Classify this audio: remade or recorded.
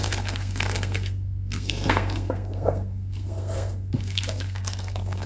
remade